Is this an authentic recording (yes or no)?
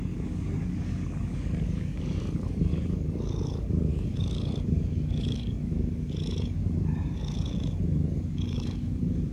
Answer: no